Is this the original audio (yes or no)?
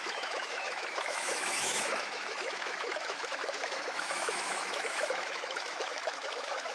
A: no